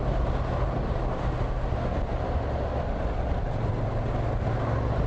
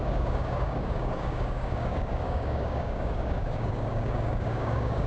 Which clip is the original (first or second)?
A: first